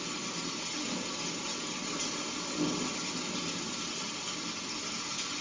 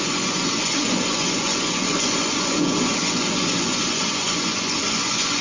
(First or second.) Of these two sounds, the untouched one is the first